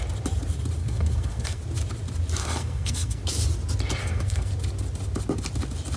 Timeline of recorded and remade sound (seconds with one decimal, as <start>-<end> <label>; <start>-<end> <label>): 0.0-0.8 recorded; 0.8-1.6 remade; 1.6-2.4 recorded; 2.4-3.2 remade; 3.2-4.0 recorded; 4.0-4.5 remade; 4.5-6.0 recorded